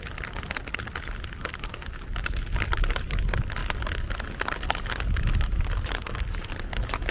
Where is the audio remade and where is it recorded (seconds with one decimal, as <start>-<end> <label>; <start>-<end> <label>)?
0.0-7.1 recorded